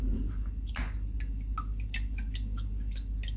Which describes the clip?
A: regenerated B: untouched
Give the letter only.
B